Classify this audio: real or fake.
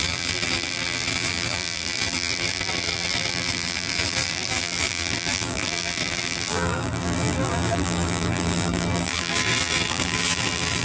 fake